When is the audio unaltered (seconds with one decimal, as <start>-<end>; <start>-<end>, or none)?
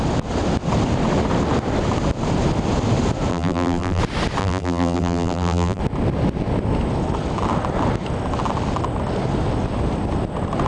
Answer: 0.0-3.3; 4.0-4.4; 5.8-10.7